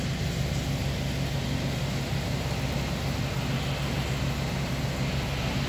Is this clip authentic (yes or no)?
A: yes